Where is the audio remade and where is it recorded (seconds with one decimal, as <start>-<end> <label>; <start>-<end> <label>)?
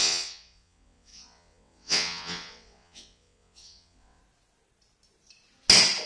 0.0-4.2 remade; 4.2-6.1 recorded